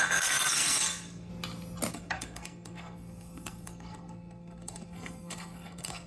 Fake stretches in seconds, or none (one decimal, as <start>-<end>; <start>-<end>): 0.0-1.3; 1.9-6.1